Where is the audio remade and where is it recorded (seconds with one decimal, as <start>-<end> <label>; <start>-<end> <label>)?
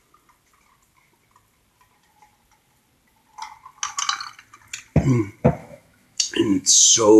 0.0-5.6 recorded; 5.6-7.2 remade